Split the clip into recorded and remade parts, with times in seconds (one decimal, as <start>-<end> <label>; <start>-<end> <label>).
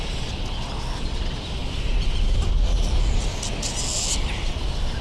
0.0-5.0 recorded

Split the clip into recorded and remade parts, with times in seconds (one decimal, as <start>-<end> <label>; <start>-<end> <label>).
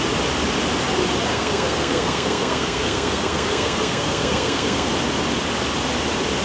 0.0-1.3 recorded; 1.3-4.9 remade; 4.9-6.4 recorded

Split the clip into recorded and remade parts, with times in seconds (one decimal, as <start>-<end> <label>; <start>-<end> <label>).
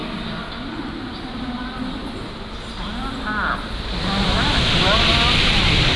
0.0-6.0 recorded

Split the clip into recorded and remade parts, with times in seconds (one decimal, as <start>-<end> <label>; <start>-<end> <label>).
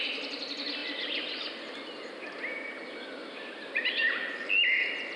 0.0-5.2 recorded